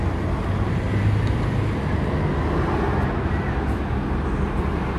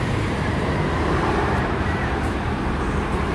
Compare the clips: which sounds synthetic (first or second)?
second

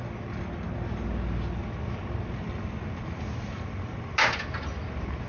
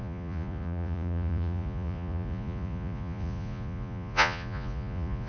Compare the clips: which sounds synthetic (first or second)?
second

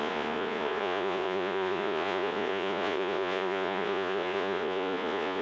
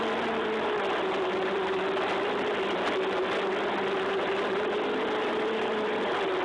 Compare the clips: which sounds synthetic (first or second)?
first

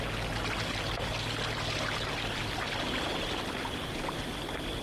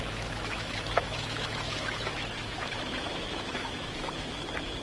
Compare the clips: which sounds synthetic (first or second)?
second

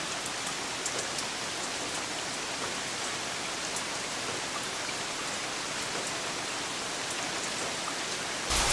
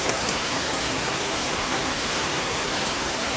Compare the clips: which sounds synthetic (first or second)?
second